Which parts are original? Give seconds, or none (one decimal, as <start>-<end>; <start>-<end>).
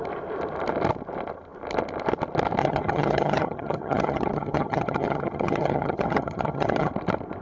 0.0-2.6; 6.9-7.4